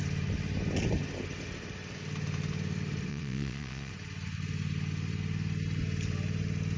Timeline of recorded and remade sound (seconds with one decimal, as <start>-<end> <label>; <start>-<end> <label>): 0.0-3.1 recorded; 3.1-3.9 remade; 3.9-6.8 recorded